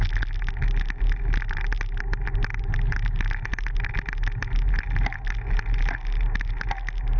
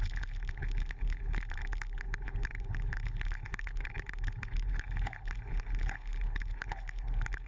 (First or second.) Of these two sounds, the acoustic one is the first